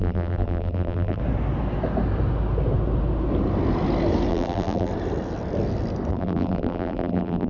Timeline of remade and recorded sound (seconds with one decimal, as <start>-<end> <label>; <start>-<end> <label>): 0.0-1.2 remade; 1.2-4.3 recorded; 4.3-4.9 remade; 4.9-6.1 recorded; 6.1-7.5 remade